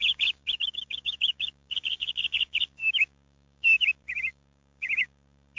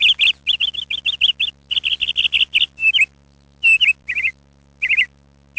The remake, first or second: first